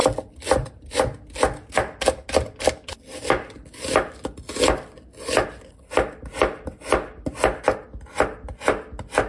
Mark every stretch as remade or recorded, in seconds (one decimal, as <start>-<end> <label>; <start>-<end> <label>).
0.0-9.3 recorded